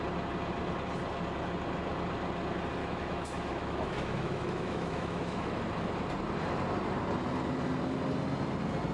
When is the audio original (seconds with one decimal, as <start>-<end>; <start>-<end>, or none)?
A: 0.0-2.8; 5.6-8.9

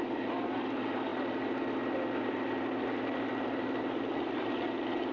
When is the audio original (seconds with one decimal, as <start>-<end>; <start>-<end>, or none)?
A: 0.0-5.1

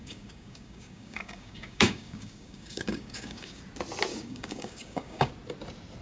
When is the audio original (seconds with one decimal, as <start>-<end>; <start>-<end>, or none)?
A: 3.6-4.1; 5.3-6.0

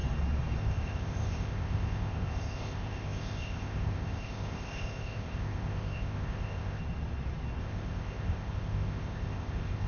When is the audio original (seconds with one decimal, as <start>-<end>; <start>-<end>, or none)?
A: 0.0-0.6; 6.8-7.6

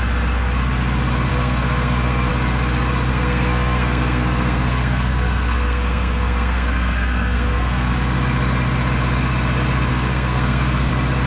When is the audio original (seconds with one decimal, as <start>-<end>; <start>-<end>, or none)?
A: 0.0-1.3; 2.3-3.1; 7.9-9.9; 10.9-11.3